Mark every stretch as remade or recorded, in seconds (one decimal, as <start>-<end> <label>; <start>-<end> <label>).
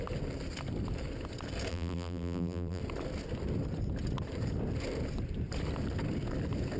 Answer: 0.0-1.7 recorded; 1.7-2.8 remade; 2.8-6.8 recorded